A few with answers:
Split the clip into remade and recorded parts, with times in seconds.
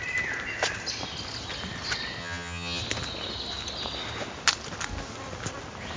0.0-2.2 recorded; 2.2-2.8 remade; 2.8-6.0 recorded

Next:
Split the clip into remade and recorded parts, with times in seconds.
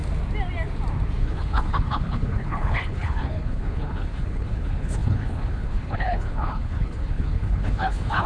0.0-1.2 recorded; 1.2-8.3 remade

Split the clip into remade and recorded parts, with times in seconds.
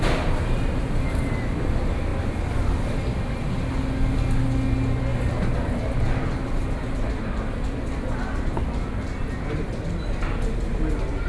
0.0-11.3 recorded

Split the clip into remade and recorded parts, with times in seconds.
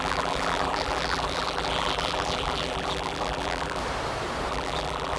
0.0-3.8 remade; 3.8-4.5 recorded; 4.5-5.2 remade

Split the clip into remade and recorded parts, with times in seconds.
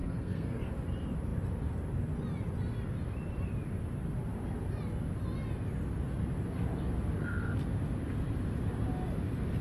0.0-0.7 remade; 0.7-9.6 recorded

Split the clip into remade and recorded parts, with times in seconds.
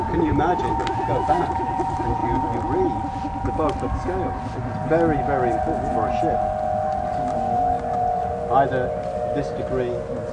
0.0-10.3 recorded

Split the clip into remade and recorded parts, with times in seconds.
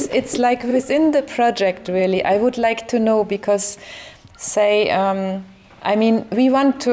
0.0-0.7 recorded; 0.7-1.2 remade; 1.2-6.9 recorded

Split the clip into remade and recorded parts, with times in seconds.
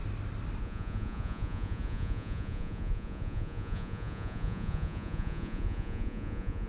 0.0-0.6 recorded; 0.6-6.7 remade